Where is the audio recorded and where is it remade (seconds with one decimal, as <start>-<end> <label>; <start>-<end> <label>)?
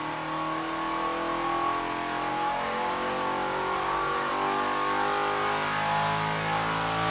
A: 0.0-2.3 recorded; 2.3-4.3 remade; 4.3-7.1 recorded